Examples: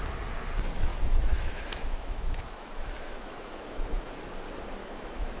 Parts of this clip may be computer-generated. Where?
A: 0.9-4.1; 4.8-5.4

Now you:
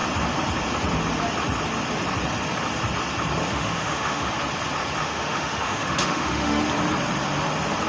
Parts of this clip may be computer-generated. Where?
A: 3.5-4.3; 5.0-6.6